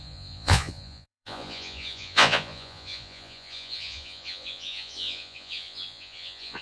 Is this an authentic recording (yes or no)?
no